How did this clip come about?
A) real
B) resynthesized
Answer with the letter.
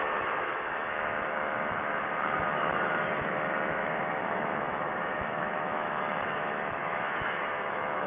B